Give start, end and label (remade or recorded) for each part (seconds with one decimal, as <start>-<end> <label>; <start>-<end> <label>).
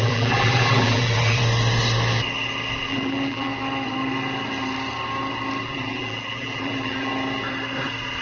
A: 0.0-1.4 remade; 1.4-2.8 recorded; 2.8-3.5 remade; 3.5-5.6 recorded; 5.6-7.1 remade; 7.1-8.2 recorded